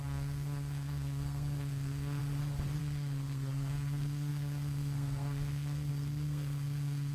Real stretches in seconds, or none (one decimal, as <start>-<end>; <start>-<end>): 2.2-2.8